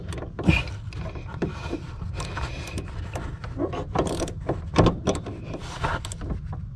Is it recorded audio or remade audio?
recorded